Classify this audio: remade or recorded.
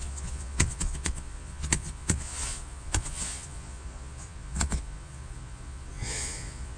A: remade